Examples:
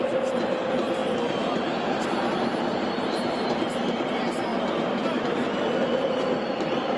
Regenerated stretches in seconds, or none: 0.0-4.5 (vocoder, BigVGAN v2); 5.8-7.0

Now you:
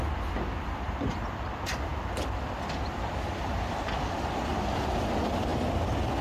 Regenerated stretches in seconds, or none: 0.0-1.9 (vocoder, BigVGAN v2); 2.8-5.5